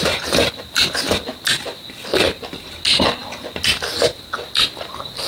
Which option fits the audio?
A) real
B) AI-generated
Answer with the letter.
A